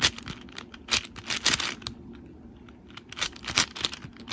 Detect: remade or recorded recorded